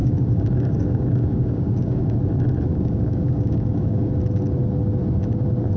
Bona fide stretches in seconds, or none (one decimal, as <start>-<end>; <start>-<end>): 2.1-2.7; 4.1-5.8